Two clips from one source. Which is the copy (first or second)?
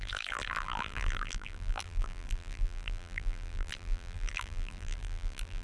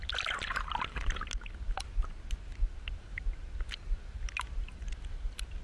first